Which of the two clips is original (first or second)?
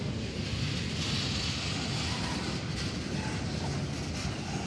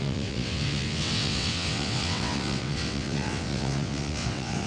first